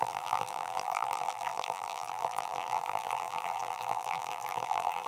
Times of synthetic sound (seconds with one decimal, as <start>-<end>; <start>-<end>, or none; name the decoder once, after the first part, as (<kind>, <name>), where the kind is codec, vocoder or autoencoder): 0.0-5.1 (vocoder, BigVGAN v2)